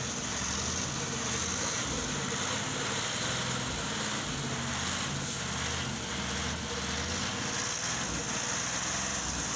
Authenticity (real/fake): real